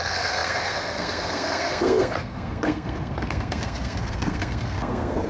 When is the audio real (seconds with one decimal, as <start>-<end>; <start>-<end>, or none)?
none